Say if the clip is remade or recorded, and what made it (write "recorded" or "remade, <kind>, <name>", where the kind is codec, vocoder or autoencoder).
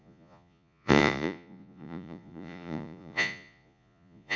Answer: remade, vocoder, Vocos